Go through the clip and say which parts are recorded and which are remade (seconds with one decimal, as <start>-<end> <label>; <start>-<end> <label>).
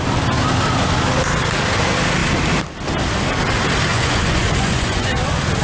0.0-3.9 recorded; 3.9-5.1 remade; 5.1-5.6 recorded